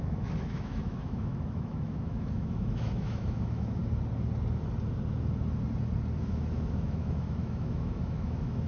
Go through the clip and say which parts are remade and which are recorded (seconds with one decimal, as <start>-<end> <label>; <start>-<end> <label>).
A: 0.0-3.8 remade; 3.8-6.2 recorded; 6.2-8.7 remade